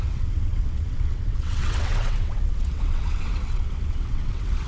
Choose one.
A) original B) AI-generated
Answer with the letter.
B